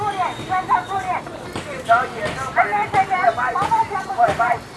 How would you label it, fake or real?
real